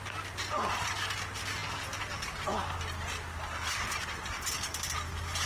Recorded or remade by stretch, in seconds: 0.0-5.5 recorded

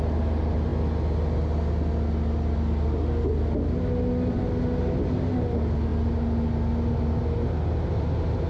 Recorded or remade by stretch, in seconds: 0.0-8.5 recorded

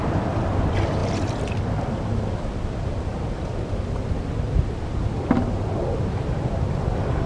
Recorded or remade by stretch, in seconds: 0.0-7.3 remade

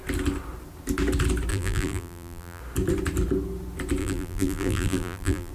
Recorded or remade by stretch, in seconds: 0.0-1.5 recorded; 1.5-2.6 remade; 2.6-4.0 recorded; 4.0-5.5 remade

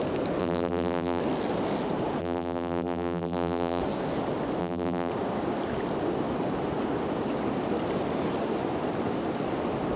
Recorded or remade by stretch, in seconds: 0.0-0.4 recorded; 0.4-1.2 remade; 1.2-2.2 recorded; 2.2-3.8 remade; 3.8-4.6 recorded; 4.6-5.1 remade; 5.1-10.0 recorded

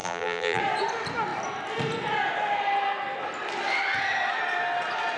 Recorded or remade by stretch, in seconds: 0.0-0.6 remade; 0.6-5.2 recorded